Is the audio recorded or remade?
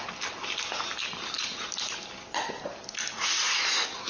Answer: recorded